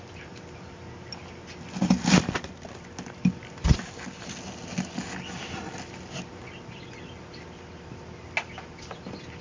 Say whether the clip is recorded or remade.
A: recorded